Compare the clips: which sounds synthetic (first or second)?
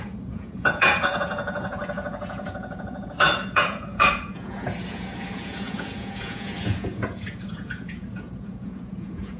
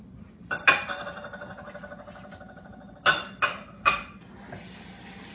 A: first